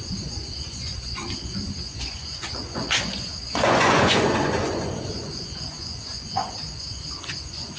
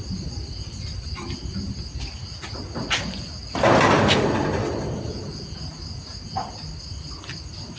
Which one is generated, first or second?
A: first